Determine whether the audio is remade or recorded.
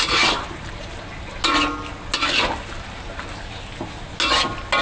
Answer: recorded